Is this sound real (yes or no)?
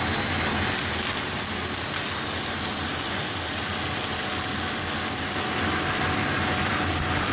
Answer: yes